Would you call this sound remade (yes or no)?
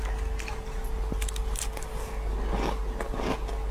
no